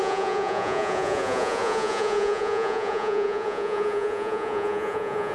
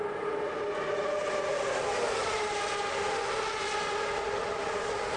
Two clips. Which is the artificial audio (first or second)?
first